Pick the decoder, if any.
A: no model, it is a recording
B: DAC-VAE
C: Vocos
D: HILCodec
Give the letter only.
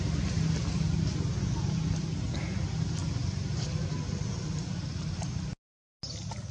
A